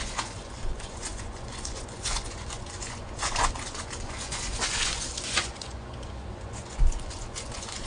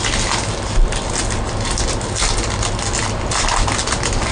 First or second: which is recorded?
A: second